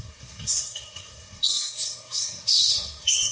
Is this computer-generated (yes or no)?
yes